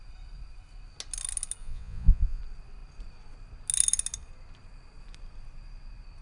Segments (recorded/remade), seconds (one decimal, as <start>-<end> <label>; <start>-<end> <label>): 0.0-1.6 recorded; 1.6-2.4 remade; 2.4-6.2 recorded